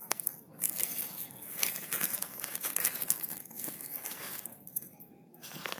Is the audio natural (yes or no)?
no